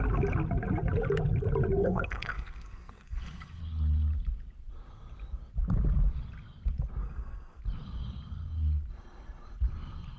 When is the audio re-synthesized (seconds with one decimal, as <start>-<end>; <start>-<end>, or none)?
1.8-3.6; 7.0-7.6